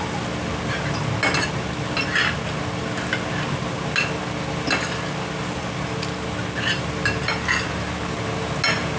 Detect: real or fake real